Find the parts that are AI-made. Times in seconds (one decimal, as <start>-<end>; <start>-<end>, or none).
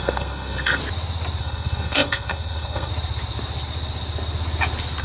0.0-0.8; 1.4-2.9